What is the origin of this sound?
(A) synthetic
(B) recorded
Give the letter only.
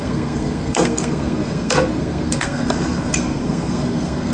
A